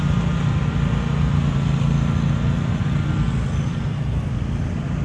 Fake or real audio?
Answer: real